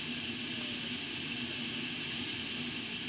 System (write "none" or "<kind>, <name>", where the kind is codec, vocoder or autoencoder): none